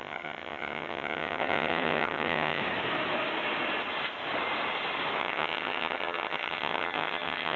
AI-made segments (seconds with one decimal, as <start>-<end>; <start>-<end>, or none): 0.0-2.6; 5.2-7.6